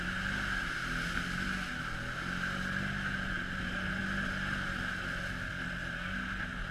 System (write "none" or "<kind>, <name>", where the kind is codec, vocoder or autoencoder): none